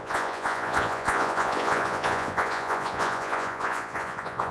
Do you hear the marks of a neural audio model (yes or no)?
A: yes